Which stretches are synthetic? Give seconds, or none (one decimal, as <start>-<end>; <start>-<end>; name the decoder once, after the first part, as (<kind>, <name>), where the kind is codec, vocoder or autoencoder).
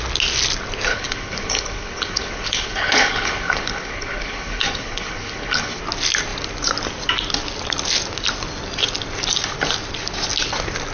0.9-5.8 (codec, HILCodec)